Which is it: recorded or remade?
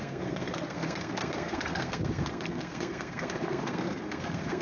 remade